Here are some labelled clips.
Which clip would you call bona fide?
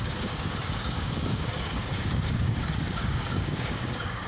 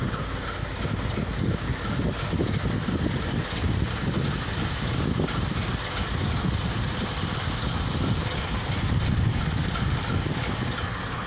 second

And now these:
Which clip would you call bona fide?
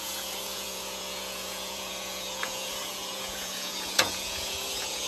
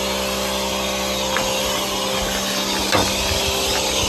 second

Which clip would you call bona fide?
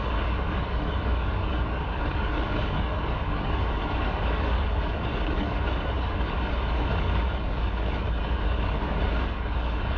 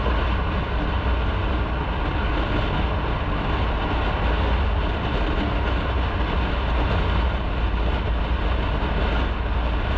second